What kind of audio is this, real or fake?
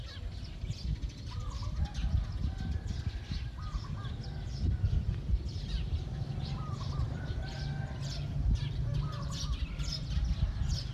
real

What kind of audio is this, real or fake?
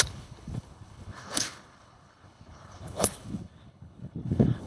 fake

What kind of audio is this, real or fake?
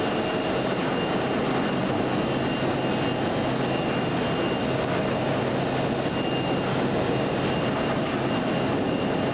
real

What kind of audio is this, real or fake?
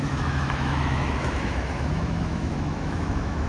fake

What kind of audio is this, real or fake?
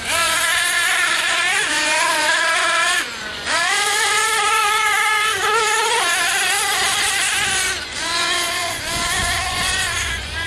fake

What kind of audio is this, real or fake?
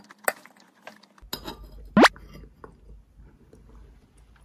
real